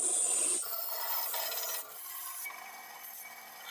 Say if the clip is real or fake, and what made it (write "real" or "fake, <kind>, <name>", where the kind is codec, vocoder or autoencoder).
real